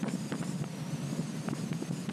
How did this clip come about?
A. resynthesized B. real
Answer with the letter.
B